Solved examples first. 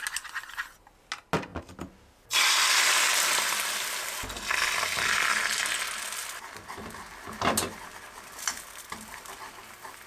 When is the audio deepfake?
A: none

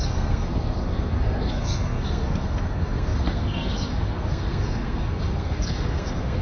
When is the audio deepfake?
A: 0.0-6.4 (codec, SNAC)

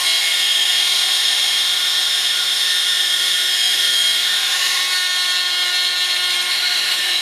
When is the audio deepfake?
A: 0.0-4.8 (autoencoder, DAC-VAE); 6.5-7.2

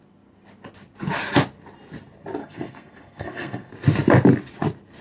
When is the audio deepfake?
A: 2.4-3.7 (codec, SNAC)

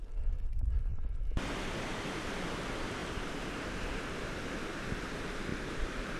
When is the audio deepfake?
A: 5.5-6.2 (vocoder, BigVGAN v2)